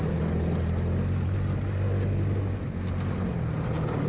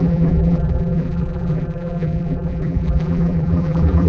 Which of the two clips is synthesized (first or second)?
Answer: second